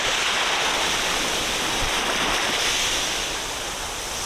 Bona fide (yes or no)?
yes